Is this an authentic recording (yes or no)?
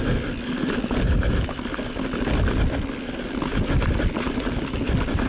yes